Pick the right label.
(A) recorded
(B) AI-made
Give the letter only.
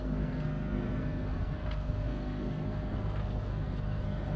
B